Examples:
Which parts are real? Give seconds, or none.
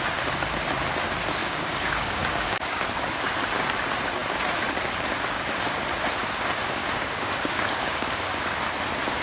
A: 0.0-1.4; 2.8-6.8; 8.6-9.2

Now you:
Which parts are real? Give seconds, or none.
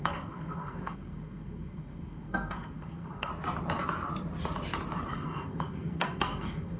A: 3.3-5.1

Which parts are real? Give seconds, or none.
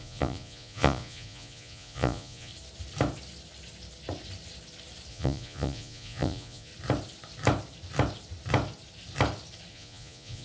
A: 2.5-5.1; 6.7-9.7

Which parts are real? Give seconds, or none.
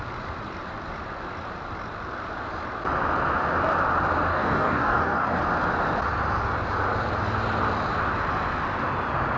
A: 0.0-4.3; 5.4-9.4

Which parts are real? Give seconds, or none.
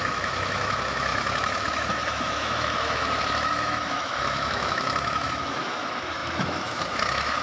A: none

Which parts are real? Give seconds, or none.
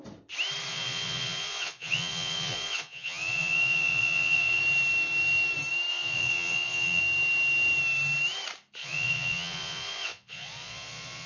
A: 0.0-0.7; 4.6-5.9; 7.0-8.8